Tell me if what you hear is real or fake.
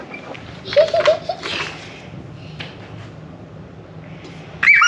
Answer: real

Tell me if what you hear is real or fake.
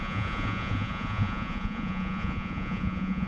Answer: fake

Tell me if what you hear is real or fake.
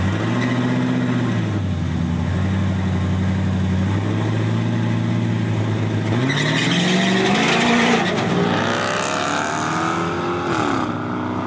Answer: real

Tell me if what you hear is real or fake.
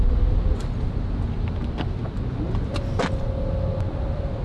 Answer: real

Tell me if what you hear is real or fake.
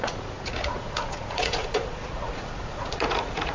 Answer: fake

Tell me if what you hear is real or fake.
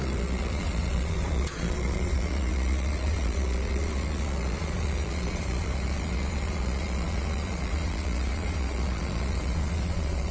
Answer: fake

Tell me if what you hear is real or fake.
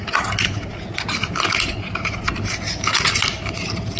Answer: real